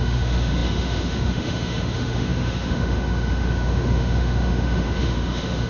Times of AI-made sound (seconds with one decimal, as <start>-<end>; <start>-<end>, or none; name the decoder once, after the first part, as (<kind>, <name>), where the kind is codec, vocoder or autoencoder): 0.0-5.7 (autoencoder, DAC-VAE)